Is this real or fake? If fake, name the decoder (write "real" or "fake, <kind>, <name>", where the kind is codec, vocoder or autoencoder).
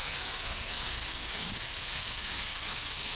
fake, codec, SNAC